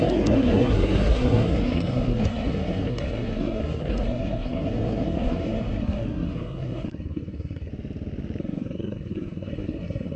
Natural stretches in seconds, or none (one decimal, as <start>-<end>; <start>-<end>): 7.7-8.4